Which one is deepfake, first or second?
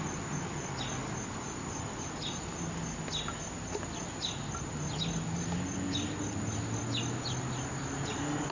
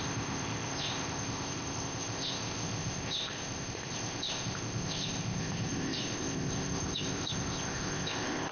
second